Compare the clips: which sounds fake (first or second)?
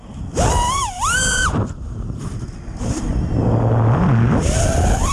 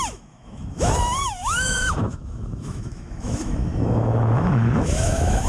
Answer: second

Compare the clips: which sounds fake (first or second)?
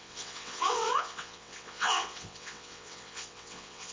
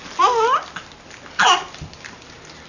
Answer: first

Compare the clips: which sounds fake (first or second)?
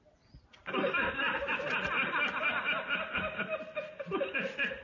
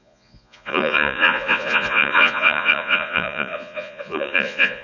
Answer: second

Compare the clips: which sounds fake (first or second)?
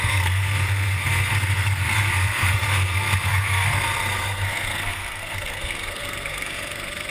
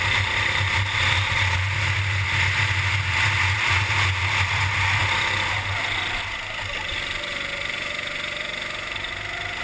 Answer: first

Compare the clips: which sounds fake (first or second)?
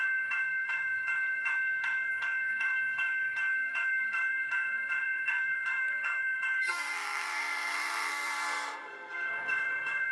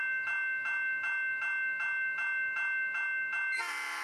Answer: first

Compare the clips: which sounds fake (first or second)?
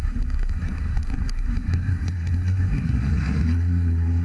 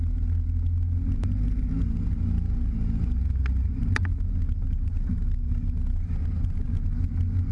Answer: first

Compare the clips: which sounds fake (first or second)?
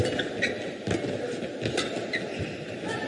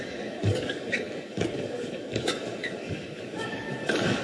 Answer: second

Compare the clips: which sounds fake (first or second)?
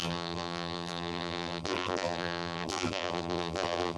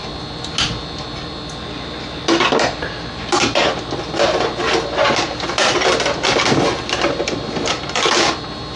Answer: first